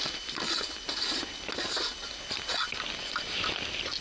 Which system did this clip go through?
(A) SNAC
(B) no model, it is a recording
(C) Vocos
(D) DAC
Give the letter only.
B